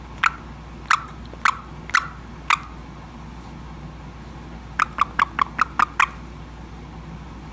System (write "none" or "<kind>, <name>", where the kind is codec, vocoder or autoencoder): none